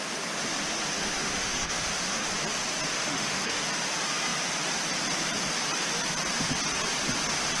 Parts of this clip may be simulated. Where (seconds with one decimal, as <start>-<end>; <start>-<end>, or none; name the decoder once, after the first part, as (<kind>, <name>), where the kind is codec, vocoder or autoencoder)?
1.0-2.3 (autoencoder, DAC-VAE); 2.9-3.6